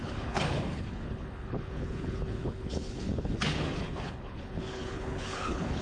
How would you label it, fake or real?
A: fake